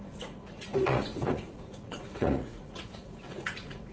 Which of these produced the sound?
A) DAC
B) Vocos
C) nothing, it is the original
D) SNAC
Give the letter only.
B